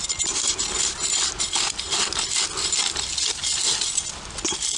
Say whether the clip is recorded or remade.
recorded